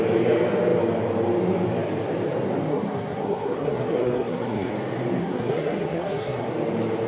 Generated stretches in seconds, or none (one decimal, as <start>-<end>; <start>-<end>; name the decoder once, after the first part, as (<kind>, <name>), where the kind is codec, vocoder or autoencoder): 2.7-4.7 (codec, SNAC); 5.2-6.5